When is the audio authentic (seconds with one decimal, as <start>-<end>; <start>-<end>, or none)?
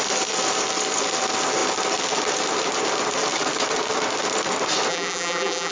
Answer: 0.0-4.9